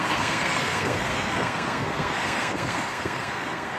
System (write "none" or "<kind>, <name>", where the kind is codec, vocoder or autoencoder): codec, SNAC